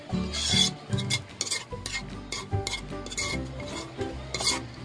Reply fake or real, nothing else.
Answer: real